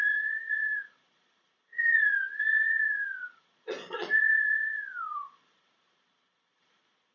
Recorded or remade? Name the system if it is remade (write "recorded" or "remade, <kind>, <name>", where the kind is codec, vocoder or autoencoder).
remade, vocoder, Vocos